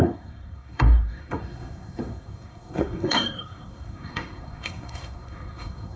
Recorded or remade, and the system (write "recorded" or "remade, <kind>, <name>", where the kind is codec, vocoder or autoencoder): remade, codec, SNAC